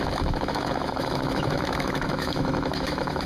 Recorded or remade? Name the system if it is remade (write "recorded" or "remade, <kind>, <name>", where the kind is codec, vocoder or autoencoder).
remade, autoencoder, DAC-VAE